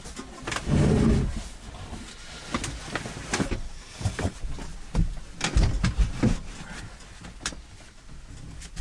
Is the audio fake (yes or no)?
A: no